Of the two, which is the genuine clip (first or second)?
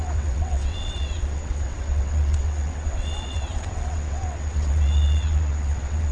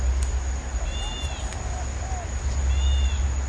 second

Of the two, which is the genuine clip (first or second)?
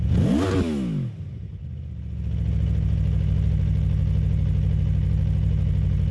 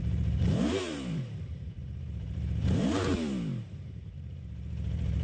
first